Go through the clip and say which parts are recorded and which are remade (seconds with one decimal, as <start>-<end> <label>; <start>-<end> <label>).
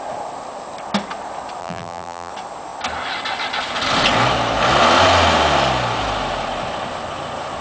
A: 0.0-1.6 recorded; 1.6-2.3 remade; 2.3-7.6 recorded